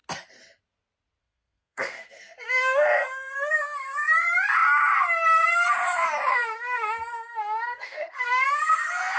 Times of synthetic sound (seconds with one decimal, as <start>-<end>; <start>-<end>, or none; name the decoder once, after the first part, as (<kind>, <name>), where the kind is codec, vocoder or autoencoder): 1.2-4.1 (codec, SNAC); 6.3-9.2